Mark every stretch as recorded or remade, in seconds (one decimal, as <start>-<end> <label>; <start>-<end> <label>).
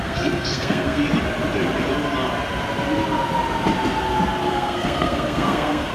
0.0-1.0 remade; 1.0-4.5 recorded; 4.5-5.9 remade